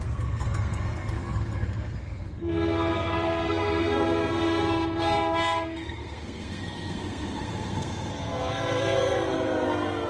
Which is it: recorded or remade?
remade